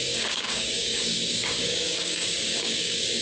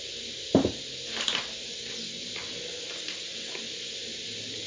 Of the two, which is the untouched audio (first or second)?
second